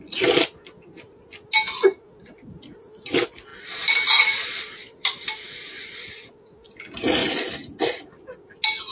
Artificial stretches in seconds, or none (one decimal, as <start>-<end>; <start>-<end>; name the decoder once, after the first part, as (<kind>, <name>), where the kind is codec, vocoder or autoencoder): none